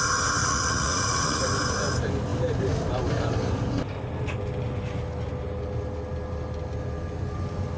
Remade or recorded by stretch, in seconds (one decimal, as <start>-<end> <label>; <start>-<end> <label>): 0.0-0.4 recorded; 0.4-1.4 remade; 1.4-7.8 recorded